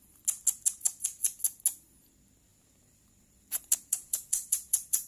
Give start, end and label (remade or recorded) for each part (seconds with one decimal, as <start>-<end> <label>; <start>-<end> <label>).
0.0-2.5 recorded; 2.5-5.1 remade